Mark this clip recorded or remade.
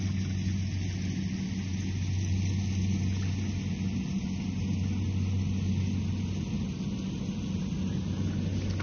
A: recorded